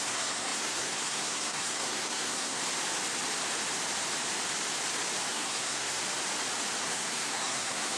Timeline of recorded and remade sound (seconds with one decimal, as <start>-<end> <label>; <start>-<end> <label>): 0.0-2.6 remade; 2.6-5.3 recorded; 5.3-6.0 remade; 6.0-6.8 recorded; 6.8-8.0 remade